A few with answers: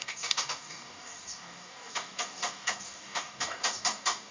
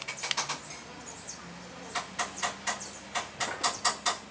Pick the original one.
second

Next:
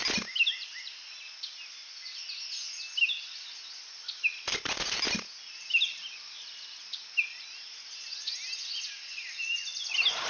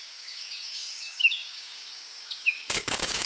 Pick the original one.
first